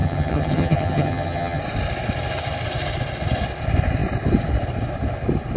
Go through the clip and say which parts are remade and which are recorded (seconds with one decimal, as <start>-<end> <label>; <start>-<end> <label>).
0.0-1.6 remade; 1.6-5.6 recorded